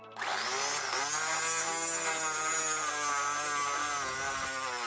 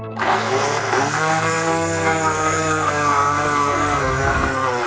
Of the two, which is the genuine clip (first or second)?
first